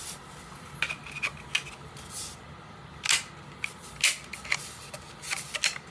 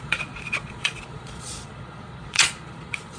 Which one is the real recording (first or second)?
first